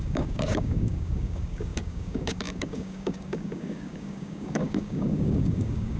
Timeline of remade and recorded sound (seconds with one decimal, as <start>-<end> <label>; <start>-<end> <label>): 0.0-6.0 remade